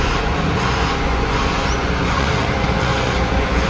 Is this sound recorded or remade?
remade